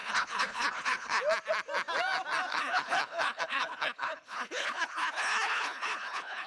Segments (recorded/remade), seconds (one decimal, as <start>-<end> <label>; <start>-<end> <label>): 0.0-1.2 remade; 1.2-2.5 recorded; 2.5-6.5 remade